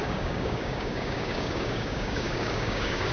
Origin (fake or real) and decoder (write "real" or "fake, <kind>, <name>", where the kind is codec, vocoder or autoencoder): fake, codec, DAC